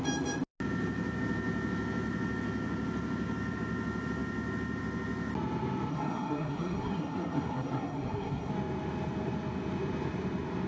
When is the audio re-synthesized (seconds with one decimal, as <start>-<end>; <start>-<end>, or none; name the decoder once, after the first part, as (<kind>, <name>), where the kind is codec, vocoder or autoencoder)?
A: 5.9-8.5 (codec, SNAC)